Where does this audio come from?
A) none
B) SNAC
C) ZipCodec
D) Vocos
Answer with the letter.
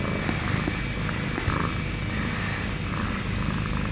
A